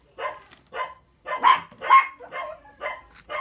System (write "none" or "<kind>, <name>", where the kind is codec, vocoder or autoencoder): none